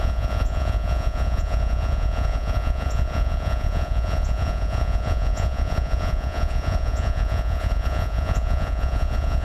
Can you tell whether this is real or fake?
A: fake